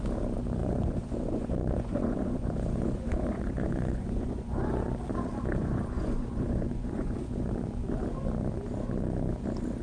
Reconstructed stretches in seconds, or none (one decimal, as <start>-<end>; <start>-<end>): 0.6-4.8; 5.6-7.5